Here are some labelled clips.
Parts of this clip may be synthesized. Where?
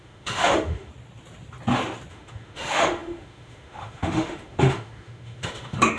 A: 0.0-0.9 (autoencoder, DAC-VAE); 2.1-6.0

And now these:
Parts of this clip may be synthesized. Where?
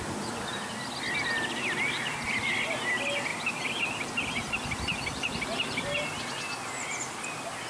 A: 3.3-7.7 (vocoder, BigVGAN v2)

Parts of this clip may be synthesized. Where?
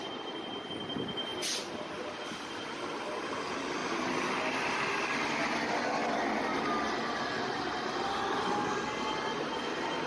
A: none